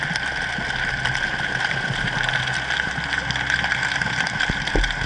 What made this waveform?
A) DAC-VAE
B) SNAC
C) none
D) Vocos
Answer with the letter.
C